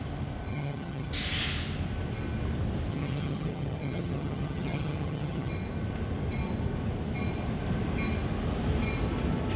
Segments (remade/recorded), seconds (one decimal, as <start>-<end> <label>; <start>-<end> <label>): 0.0-0.5 recorded; 0.5-1.1 remade; 1.1-2.9 recorded; 2.9-5.5 remade; 5.5-9.6 recorded